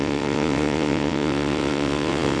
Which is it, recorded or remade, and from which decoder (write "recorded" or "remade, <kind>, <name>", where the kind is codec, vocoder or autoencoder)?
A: remade, vocoder, WaveNeXt